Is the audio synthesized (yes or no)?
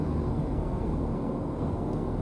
yes